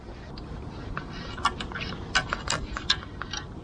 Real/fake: real